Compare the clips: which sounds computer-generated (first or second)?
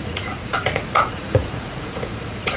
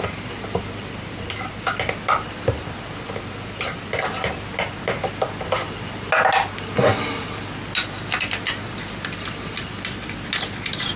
first